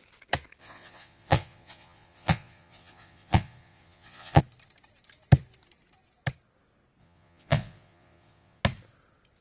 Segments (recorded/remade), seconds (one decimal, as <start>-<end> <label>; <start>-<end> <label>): 0.0-0.6 recorded; 0.6-4.4 remade; 4.4-7.0 recorded; 7.0-8.6 remade; 8.6-9.4 recorded